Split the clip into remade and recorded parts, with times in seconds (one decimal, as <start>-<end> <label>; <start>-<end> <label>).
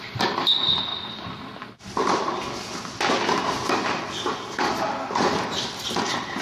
0.0-6.4 recorded